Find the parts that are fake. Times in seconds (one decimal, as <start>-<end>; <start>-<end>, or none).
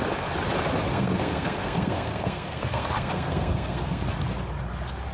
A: 0.9-4.0